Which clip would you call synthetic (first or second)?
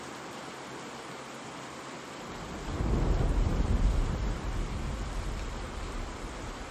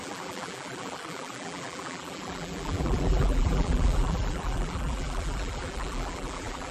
second